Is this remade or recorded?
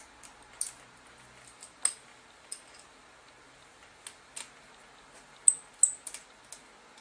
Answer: recorded